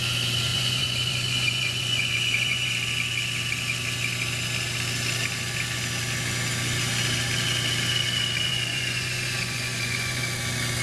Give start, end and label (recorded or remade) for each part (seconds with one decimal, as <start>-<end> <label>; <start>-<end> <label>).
0.0-0.5 recorded; 0.5-2.7 remade; 2.7-8.5 recorded; 8.5-10.2 remade; 10.2-10.8 recorded